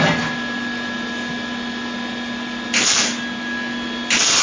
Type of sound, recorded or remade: recorded